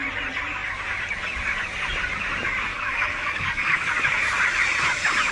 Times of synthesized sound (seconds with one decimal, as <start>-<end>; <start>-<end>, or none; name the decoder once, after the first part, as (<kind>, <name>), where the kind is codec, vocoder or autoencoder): 2.7-3.9 (codec, DAC)